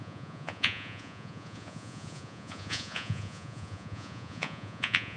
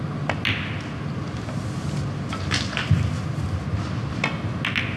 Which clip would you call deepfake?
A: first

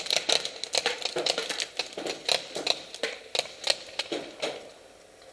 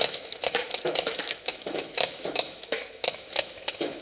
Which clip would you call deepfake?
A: second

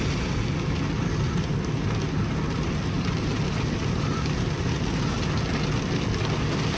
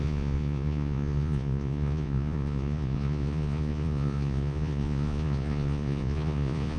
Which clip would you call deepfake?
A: second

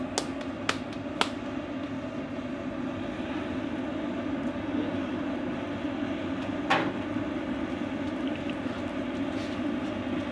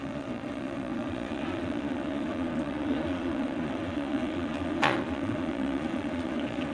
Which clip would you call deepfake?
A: second